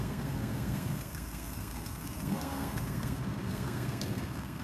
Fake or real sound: fake